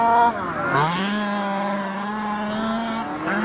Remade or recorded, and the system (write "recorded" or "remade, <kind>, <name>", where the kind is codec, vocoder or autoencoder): recorded